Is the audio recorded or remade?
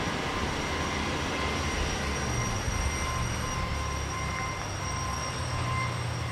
recorded